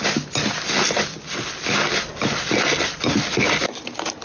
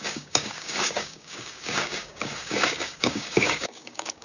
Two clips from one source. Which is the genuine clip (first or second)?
first